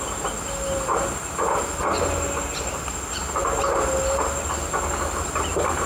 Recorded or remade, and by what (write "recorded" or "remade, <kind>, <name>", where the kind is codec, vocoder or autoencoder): recorded